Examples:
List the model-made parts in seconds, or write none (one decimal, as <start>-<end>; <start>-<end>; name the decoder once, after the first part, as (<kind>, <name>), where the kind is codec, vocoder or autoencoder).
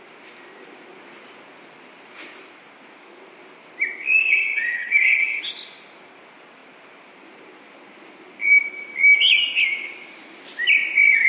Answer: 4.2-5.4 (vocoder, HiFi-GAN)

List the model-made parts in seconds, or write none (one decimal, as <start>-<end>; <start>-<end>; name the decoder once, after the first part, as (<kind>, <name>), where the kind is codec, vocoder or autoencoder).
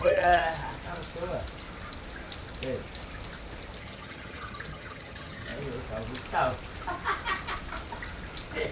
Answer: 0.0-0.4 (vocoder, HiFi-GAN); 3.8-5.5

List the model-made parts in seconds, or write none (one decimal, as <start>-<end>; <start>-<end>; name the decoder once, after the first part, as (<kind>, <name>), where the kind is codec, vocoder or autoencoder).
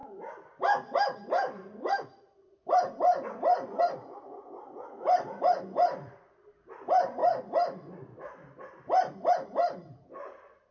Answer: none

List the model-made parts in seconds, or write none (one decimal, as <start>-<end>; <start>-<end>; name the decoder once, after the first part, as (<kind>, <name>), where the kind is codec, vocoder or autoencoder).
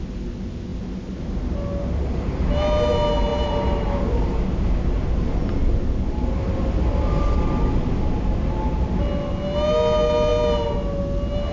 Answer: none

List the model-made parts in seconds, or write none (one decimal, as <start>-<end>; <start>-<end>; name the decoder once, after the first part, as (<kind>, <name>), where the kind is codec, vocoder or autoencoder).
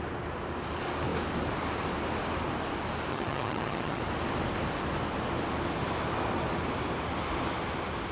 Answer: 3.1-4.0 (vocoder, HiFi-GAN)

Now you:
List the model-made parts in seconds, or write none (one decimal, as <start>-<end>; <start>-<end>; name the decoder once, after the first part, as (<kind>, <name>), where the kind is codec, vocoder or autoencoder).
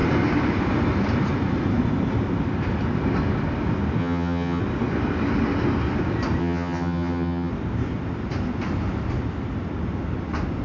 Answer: 4.0-4.6 (vocoder, HiFi-GAN); 6.4-7.5